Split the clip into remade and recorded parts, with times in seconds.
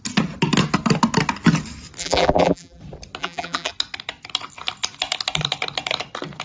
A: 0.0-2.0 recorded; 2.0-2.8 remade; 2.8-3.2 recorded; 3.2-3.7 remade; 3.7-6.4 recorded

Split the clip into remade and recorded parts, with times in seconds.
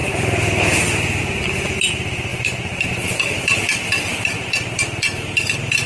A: 0.0-2.3 recorded; 2.3-5.9 remade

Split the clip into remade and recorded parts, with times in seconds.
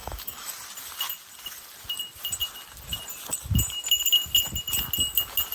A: 0.0-0.5 remade; 0.5-5.5 recorded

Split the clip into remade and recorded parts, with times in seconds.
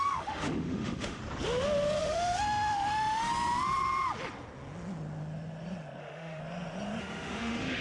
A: 0.0-1.2 remade; 1.2-2.0 recorded; 2.0-3.3 remade; 3.3-6.0 recorded; 6.0-6.4 remade; 6.4-7.0 recorded; 7.0-7.8 remade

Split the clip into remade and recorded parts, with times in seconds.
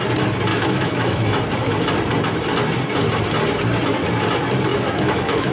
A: 0.0-0.5 recorded; 0.5-1.4 remade; 1.4-4.7 recorded; 4.7-5.5 remade